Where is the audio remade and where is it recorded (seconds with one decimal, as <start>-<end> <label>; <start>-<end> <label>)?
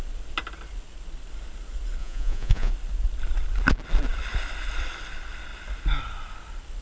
0.0-2.0 recorded; 2.0-2.7 remade; 2.7-6.8 recorded